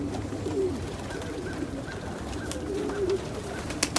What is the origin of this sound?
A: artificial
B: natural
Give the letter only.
B